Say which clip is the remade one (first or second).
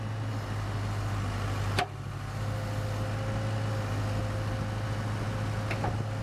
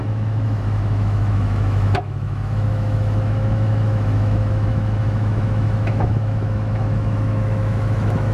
second